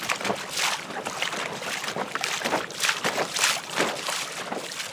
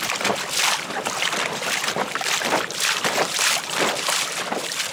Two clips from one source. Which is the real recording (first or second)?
first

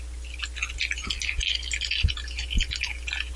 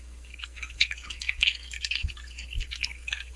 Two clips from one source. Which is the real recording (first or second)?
first